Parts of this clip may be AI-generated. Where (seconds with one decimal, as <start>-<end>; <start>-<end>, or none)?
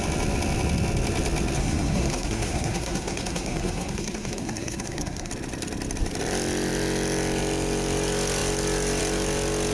1.6-5.3